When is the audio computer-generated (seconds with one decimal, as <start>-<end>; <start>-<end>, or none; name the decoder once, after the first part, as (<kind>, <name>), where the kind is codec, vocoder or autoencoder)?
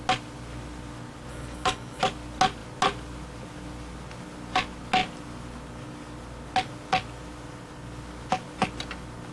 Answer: 1.3-2.0 (autoencoder, DAC-VAE)